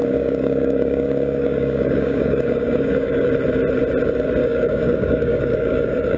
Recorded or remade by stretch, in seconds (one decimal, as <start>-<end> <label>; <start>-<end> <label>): 0.0-3.3 remade; 3.3-4.4 recorded; 4.4-6.2 remade

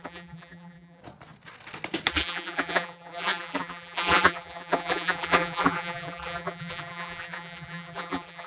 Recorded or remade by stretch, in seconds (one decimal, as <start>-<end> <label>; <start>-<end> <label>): 0.0-1.0 remade; 1.0-2.1 recorded; 2.1-8.5 remade